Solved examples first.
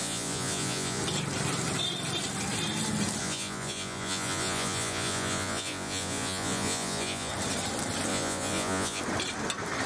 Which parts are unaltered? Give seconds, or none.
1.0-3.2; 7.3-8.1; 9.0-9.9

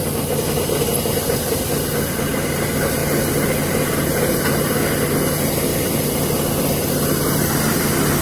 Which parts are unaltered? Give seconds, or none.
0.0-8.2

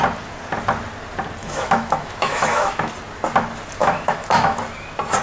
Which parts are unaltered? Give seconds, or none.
0.0-1.4; 2.9-3.8; 4.6-5.2